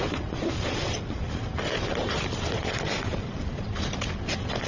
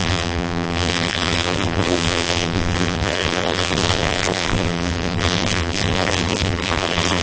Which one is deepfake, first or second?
second